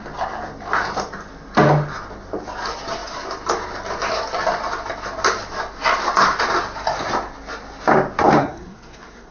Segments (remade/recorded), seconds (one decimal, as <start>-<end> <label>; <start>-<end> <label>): 0.0-8.4 recorded; 8.4-9.3 remade